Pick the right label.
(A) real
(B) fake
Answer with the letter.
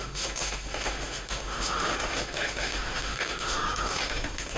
B